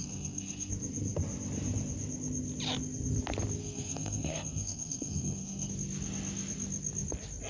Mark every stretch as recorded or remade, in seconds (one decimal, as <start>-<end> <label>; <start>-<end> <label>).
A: 0.0-0.7 remade; 0.7-3.6 recorded; 3.6-5.7 remade; 5.7-7.5 recorded